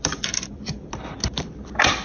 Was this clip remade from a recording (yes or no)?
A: yes